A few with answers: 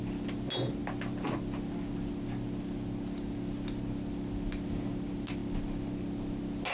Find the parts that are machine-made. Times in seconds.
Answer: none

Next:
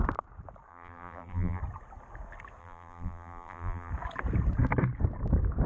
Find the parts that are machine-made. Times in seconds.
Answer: 0.7-1.6; 2.6-3.9

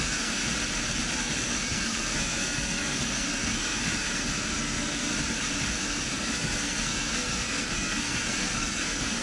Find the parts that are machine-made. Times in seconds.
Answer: 0.0-0.4; 1.2-5.1; 5.8-9.2

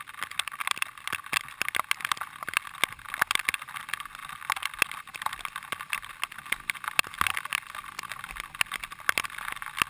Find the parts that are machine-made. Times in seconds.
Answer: none